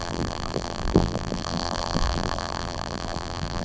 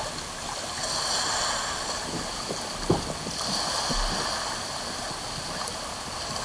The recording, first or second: second